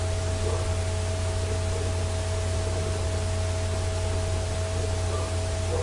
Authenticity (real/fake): real